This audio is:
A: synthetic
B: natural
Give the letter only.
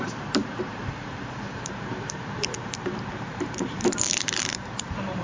A